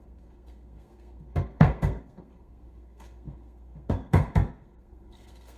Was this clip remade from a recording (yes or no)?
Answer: yes